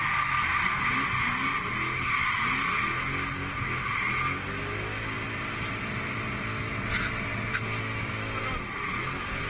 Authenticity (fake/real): real